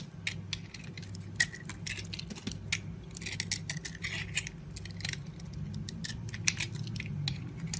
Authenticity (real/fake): real